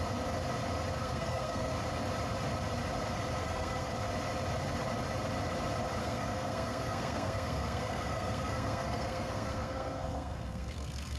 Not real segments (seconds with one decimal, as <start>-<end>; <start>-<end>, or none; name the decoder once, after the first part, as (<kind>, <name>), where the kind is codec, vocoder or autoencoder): 1.0-1.7 (codec, SNAC); 3.4-3.9; 6.0-11.2